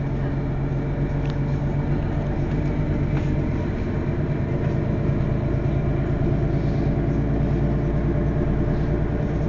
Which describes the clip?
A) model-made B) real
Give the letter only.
B